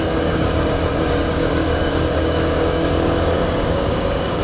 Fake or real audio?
fake